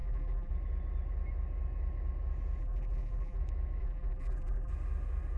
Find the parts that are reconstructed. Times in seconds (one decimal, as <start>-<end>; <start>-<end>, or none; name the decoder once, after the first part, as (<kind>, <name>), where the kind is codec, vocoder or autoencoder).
0.0-0.5 (vocoder, BigVGAN v2); 2.6-3.4; 3.8-4.7